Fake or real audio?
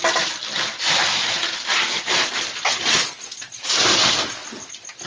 fake